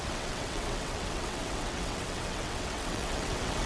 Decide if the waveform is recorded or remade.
remade